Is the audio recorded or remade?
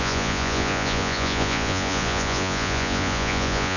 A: remade